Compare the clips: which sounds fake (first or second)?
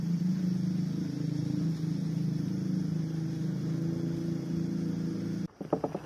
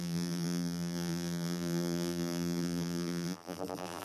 second